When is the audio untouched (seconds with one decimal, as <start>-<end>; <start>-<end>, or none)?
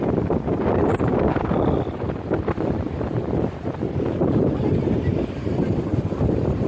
0.0-6.7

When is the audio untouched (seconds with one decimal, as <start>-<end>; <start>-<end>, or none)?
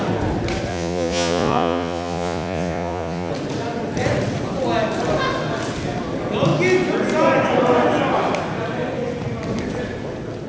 0.0-0.7; 3.3-10.5